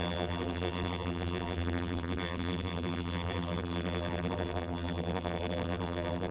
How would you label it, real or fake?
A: fake